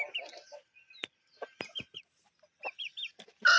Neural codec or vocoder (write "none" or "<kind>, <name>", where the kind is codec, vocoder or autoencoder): none